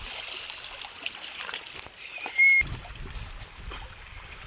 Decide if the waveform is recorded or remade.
recorded